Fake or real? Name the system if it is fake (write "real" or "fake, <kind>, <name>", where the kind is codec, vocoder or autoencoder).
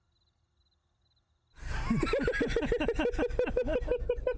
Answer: real